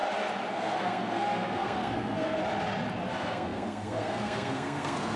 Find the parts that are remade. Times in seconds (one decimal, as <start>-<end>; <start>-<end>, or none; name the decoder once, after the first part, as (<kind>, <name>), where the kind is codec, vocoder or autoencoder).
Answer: 0.5-2.4 (codec, SNAC); 3.1-5.2